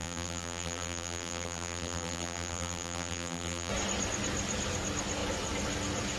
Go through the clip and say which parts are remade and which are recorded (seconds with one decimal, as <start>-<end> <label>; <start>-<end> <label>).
0.0-3.7 remade; 3.7-6.2 recorded